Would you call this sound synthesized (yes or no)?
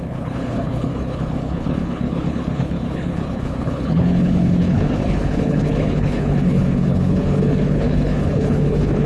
yes